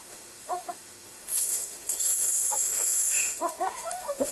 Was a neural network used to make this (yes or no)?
yes